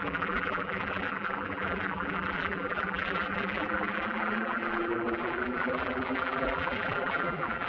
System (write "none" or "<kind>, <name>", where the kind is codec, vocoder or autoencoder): vocoder, BigVGAN v2